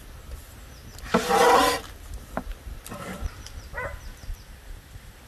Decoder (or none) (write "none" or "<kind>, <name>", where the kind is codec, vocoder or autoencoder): none